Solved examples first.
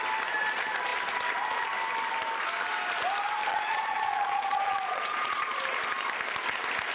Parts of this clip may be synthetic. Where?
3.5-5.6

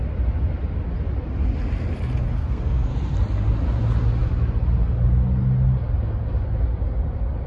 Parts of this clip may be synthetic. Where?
2.4-2.9

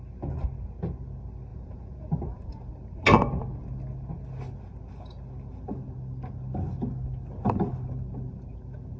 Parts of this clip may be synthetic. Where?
1.5-2.7

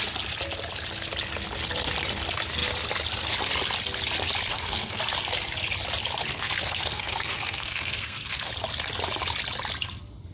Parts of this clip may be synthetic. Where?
4.5-5.0; 6.3-8.5

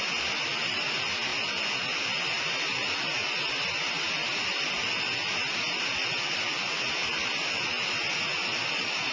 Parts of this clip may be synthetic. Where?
none